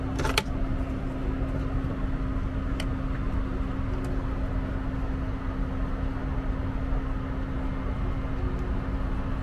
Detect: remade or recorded recorded